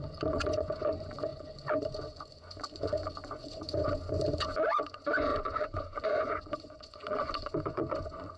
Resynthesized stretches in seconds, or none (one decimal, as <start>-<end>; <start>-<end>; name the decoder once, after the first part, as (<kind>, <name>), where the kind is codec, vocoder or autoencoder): 0.0-8.4 (vocoder, Vocos)